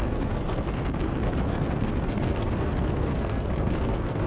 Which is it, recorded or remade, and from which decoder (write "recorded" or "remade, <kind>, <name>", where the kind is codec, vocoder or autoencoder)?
remade, codec, SNAC